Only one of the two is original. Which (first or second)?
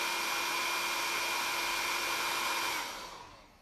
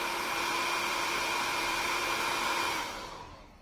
first